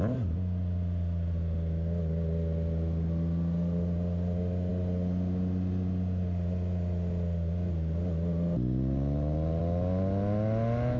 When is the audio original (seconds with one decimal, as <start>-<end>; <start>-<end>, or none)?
0.0-11.0